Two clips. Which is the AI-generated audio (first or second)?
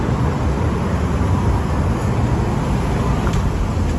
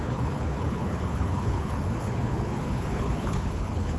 second